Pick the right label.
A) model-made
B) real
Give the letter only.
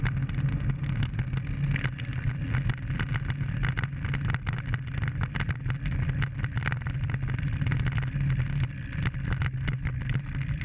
B